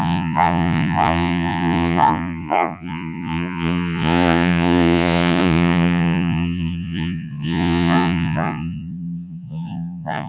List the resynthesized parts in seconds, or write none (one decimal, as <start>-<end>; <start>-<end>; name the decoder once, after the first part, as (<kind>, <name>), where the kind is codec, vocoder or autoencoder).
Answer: 0.0-10.3 (vocoder, Vocos)